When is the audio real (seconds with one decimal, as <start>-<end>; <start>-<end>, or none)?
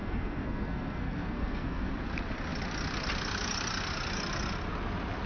1.9-5.3